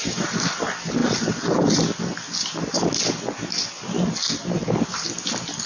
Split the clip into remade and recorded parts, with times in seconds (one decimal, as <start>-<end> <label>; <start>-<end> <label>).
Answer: 0.0-5.7 recorded